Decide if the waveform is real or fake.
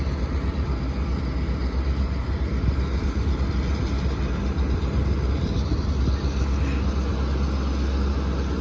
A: real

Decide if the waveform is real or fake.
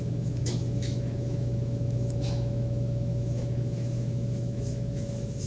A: fake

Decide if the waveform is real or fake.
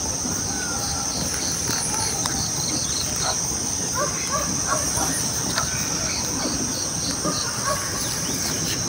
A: real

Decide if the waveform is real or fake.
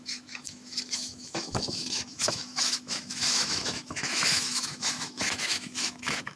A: fake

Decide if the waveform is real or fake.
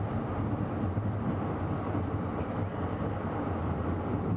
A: real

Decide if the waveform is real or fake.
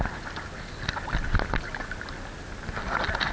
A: real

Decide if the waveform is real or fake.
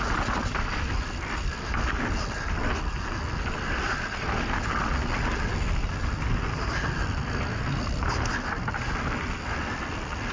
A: real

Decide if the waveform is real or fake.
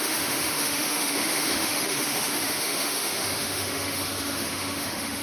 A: fake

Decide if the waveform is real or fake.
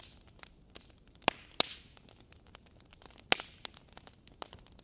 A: real